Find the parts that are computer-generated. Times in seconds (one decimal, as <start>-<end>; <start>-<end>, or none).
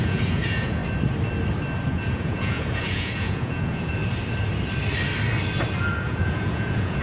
0.0-0.8; 1.9-4.0; 5.9-7.0